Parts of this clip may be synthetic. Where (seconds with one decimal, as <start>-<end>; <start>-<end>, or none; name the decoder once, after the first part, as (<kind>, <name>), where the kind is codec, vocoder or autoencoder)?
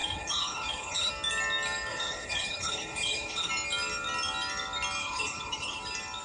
0.0-1.1 (codec, HILCodec); 1.9-3.5; 5.0-5.8